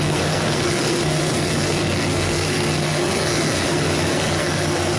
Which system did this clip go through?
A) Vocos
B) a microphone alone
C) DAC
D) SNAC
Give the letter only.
D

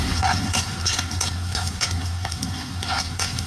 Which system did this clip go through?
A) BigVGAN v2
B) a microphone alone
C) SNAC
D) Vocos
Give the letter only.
C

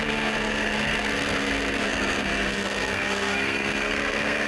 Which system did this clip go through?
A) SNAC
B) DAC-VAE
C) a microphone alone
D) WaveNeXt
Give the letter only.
A